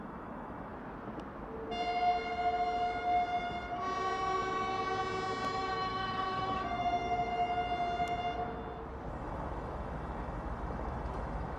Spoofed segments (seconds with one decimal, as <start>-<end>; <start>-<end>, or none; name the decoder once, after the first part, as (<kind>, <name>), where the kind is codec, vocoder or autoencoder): 0.0-0.7 (autoencoder, DAC-VAE); 5.5-7.3; 9.1-11.6